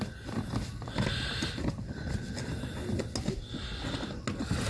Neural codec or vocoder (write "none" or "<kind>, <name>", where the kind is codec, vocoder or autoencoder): none